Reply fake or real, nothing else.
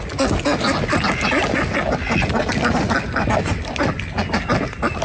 real